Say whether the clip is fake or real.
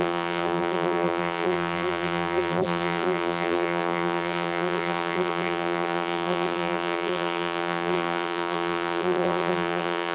fake